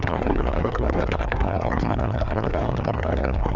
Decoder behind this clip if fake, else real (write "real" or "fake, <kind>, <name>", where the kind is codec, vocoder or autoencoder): fake, codec, SNAC